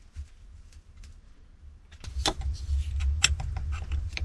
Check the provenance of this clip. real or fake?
real